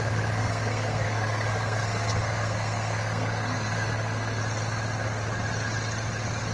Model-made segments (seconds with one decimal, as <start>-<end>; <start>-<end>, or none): 0.0-4.4